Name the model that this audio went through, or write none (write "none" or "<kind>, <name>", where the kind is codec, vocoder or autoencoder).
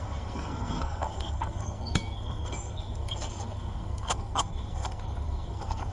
codec, SNAC